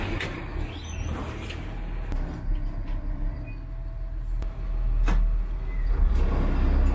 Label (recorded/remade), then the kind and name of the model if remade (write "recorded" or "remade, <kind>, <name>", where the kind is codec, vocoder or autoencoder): recorded